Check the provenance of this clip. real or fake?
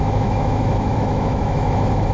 fake